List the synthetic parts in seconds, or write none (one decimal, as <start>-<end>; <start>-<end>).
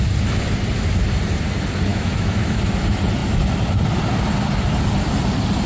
1.9-2.6